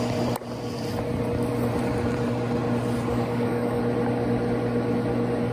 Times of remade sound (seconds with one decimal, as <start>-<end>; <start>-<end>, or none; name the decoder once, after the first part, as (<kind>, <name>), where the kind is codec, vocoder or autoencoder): 3.1-3.8 (codec, DAC)